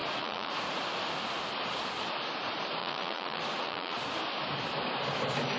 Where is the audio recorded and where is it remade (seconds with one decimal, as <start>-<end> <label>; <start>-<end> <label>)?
0.0-0.8 remade; 0.8-2.8 recorded; 2.8-4.0 remade; 4.0-5.6 recorded